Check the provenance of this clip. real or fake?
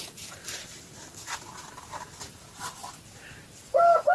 real